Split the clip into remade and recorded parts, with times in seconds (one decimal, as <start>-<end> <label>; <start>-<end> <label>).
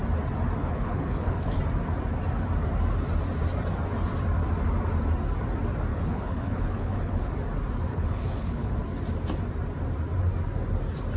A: 0.0-0.6 recorded; 0.6-1.6 remade; 1.6-5.9 recorded; 5.9-7.3 remade; 7.3-7.9 recorded; 7.9-8.7 remade; 8.7-11.2 recorded